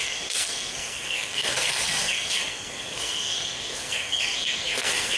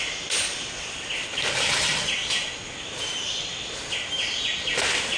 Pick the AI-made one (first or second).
first